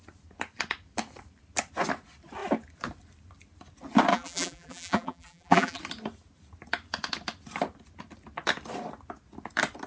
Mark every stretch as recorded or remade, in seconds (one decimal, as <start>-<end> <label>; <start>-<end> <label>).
0.0-4.1 recorded; 4.1-5.8 remade; 5.8-9.9 recorded